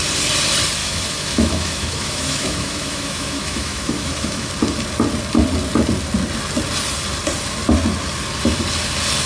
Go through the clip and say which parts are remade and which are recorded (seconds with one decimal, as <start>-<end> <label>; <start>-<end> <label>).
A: 0.0-0.8 recorded; 0.8-4.5 remade; 4.5-9.3 recorded